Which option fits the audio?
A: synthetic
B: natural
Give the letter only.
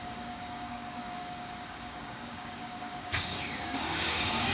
A